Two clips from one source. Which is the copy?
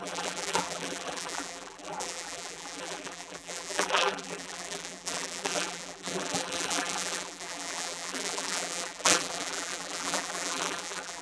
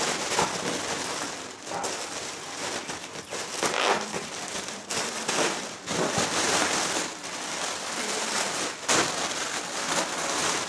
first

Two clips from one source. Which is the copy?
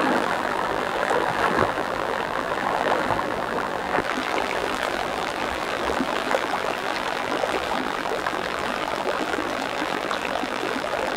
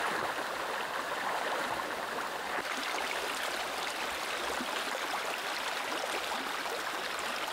first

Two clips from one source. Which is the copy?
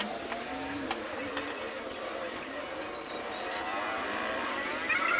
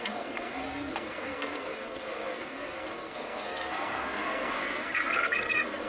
second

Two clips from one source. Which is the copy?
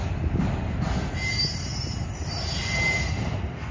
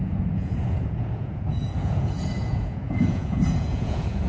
second